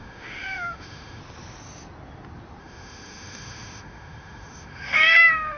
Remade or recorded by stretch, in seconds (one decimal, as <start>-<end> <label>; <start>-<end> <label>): 0.0-1.2 remade; 1.2-2.6 recorded; 2.6-5.6 remade